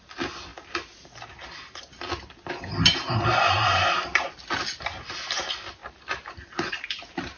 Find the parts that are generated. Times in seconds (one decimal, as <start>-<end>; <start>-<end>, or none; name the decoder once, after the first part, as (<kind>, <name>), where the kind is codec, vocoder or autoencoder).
none